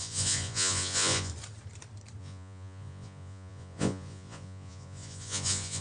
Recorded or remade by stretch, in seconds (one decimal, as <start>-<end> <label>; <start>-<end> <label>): 0.0-1.3 remade; 1.3-2.2 recorded; 2.2-5.8 remade